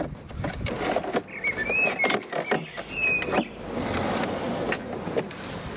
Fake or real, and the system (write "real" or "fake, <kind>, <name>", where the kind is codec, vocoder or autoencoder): real